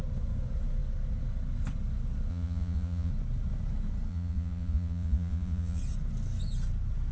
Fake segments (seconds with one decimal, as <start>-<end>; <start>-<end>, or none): 2.3-3.1; 4.1-5.8